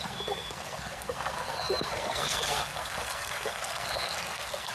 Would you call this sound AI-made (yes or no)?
yes